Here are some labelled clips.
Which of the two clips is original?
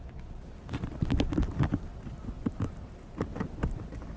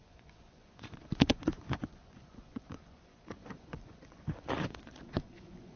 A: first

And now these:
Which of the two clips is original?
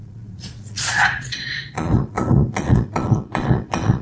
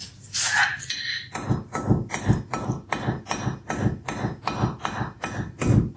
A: second